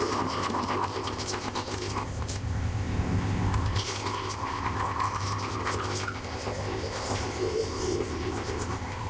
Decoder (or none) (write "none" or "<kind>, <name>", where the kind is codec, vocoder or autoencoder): codec, ZipCodec